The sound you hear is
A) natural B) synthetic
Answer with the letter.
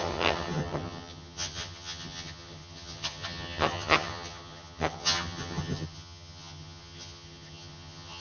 B